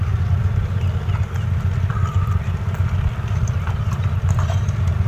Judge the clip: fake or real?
real